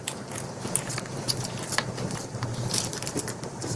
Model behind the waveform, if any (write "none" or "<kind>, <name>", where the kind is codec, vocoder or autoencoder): vocoder, BigVGAN v2